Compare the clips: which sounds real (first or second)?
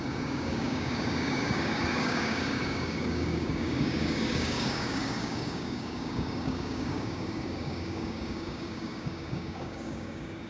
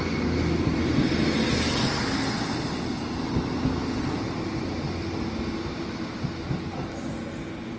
second